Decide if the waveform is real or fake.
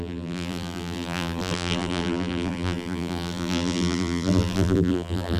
fake